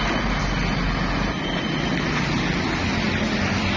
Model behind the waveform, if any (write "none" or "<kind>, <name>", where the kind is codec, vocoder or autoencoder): none